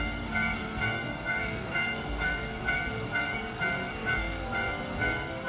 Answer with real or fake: fake